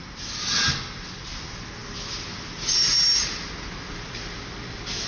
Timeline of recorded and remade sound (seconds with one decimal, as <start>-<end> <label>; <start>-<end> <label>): 0.0-5.1 recorded